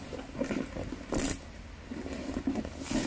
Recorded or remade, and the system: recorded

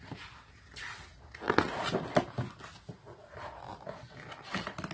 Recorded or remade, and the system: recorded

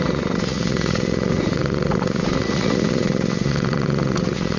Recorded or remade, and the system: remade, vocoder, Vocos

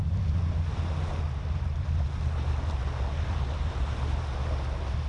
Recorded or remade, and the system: recorded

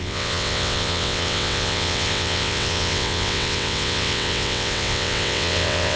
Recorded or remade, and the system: remade, vocoder, WaveNeXt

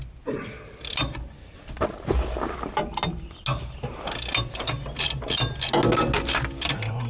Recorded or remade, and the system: recorded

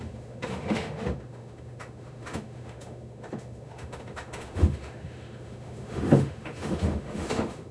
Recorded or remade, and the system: remade, autoencoder, DAC-VAE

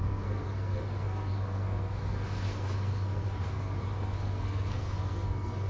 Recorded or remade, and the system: remade, codec, SNAC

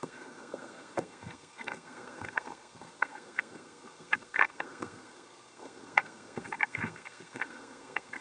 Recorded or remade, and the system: remade, codec, SNAC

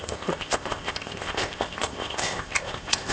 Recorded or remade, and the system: remade, codec, ZipCodec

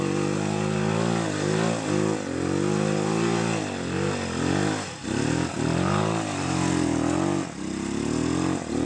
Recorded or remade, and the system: recorded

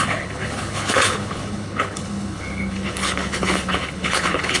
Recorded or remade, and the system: remade, codec, HILCodec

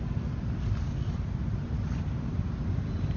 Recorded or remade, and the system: recorded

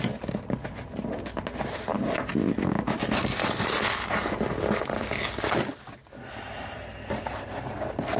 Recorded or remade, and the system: recorded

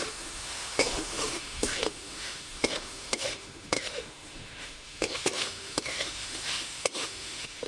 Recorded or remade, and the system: remade, autoencoder, DAC-VAE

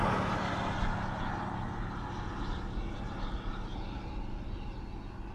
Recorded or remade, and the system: recorded